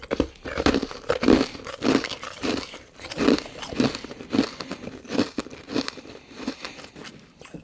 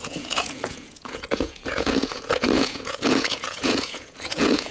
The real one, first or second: first